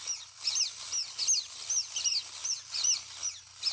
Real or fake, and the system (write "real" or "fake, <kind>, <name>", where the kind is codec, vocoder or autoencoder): real